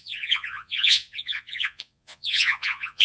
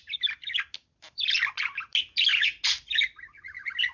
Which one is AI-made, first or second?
first